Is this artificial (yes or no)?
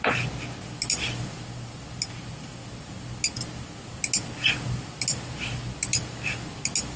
no